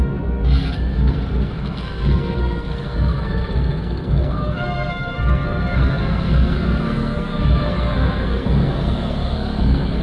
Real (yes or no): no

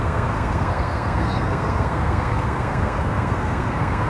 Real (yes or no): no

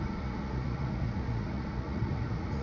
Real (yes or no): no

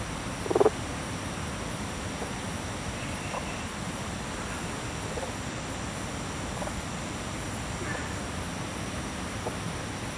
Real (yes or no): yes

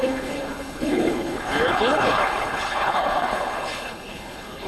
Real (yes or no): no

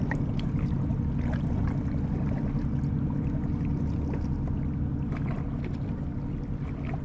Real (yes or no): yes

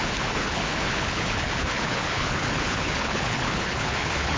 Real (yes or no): no